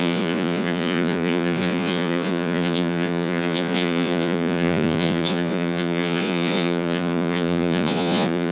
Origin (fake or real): fake